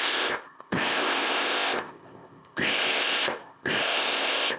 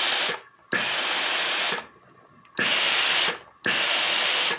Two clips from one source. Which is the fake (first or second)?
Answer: first